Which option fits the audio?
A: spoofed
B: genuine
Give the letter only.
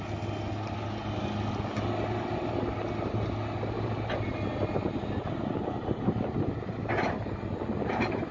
B